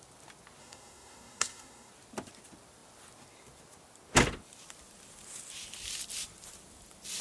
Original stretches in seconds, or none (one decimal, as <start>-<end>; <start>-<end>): 0.0-0.6; 1.9-7.2